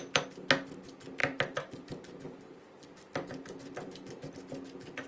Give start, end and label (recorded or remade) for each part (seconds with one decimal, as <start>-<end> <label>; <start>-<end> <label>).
0.0-1.2 recorded; 1.2-4.3 remade; 4.3-5.1 recorded